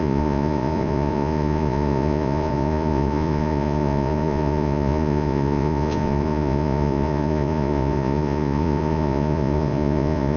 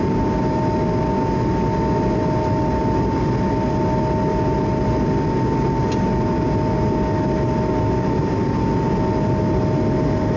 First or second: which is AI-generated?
first